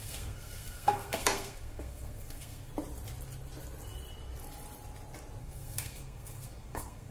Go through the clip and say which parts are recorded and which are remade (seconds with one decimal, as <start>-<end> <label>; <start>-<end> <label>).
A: 0.0-2.7 remade; 2.7-5.4 recorded; 5.4-7.1 remade